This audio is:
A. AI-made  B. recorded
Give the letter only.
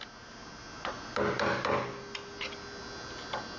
B